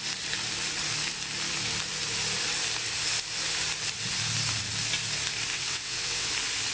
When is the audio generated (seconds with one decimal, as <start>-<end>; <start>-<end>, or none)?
5.5-6.3